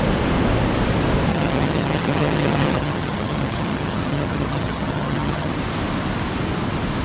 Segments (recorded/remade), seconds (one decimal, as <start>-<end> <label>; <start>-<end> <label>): 0.0-1.3 recorded; 1.3-5.5 remade; 5.5-7.0 recorded